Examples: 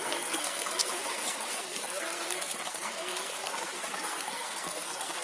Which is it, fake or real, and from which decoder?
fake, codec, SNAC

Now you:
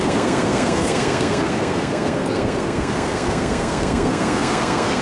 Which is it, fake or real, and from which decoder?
fake, codec, SNAC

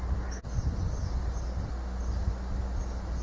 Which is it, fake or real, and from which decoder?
real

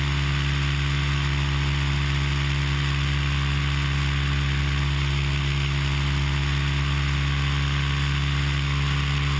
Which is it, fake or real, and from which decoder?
real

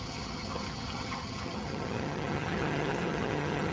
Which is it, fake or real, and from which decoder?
fake, vocoder, HiFi-GAN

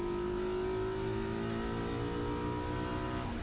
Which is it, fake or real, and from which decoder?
real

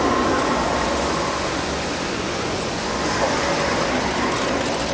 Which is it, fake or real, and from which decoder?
fake, vocoder, Vocos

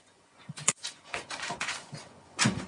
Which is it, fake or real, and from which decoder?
fake, vocoder, Vocos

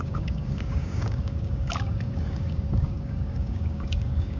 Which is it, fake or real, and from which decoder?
fake, codec, DAC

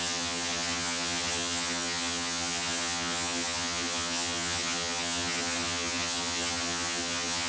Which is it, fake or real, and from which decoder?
fake, vocoder, HiFi-GAN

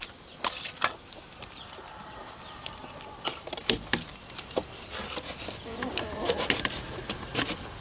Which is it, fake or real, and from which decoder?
real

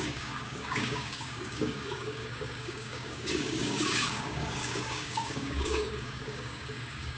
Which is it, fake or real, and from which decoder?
fake, codec, DAC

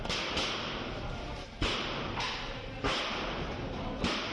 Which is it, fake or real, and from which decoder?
real